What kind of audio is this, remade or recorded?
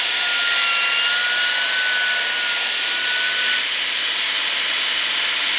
recorded